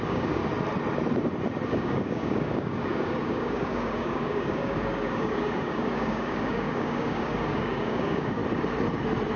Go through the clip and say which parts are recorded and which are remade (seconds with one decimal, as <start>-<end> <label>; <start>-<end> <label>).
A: 0.0-0.4 remade; 0.4-1.7 recorded; 1.7-8.4 remade; 8.4-9.4 recorded